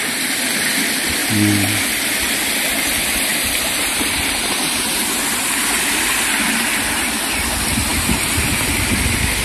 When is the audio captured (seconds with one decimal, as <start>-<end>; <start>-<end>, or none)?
0.0-3.3; 6.2-7.9; 8.7-9.4